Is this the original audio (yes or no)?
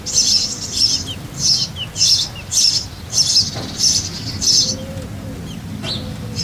yes